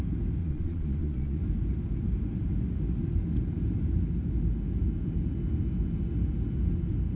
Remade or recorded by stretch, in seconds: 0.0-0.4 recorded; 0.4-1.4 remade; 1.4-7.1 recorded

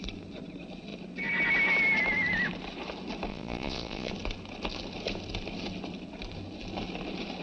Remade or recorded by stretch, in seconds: 0.0-3.3 recorded; 3.3-4.1 remade; 4.1-7.4 recorded

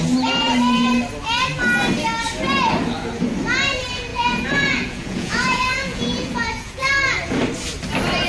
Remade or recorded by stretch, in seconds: 0.0-4.1 recorded; 4.1-6.8 remade; 6.8-8.3 recorded